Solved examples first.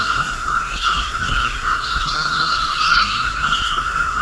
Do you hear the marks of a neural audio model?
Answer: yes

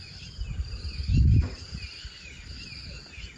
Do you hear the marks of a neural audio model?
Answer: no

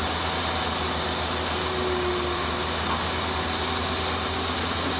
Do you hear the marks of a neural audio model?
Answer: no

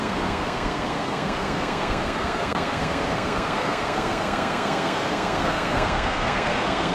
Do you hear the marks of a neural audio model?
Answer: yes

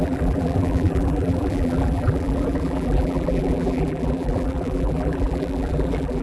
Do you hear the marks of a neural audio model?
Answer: yes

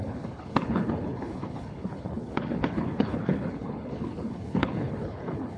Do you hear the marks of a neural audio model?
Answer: yes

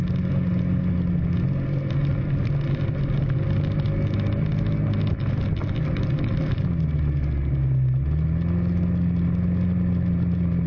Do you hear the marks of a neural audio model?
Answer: no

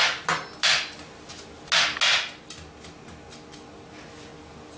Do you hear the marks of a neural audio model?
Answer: no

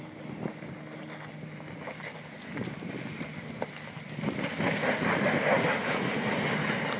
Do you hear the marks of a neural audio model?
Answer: no